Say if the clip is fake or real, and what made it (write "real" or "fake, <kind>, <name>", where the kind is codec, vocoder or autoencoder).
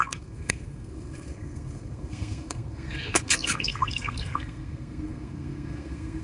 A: fake, codec, SNAC